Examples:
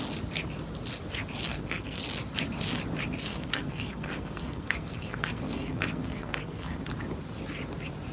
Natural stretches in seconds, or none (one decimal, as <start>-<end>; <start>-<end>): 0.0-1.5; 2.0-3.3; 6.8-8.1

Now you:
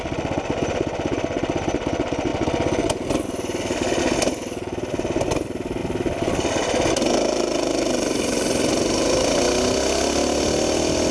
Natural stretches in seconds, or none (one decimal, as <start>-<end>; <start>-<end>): 0.0-5.8; 9.4-11.1

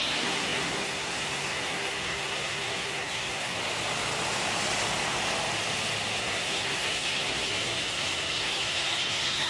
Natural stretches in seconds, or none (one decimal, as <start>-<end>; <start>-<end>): 3.6-6.2

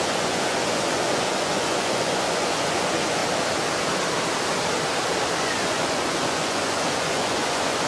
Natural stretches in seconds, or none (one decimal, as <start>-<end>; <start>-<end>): 3.2-5.4

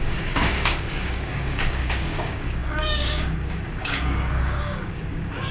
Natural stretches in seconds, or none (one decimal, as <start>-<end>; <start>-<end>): none

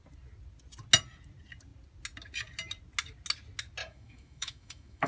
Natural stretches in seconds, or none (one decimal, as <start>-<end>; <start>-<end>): 0.0-3.8

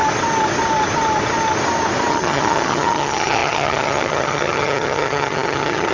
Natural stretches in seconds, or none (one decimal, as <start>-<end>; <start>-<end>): 0.0-2.1

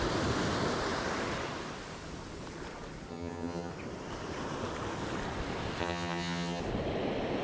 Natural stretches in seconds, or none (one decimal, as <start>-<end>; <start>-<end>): 0.0-3.1; 3.7-5.8; 6.6-7.4